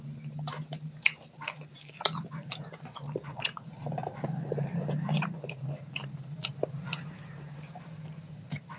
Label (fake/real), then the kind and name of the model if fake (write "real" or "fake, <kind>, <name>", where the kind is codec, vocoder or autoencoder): fake, vocoder, BigVGAN v2